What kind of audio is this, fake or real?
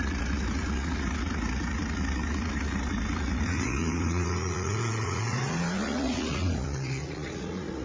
fake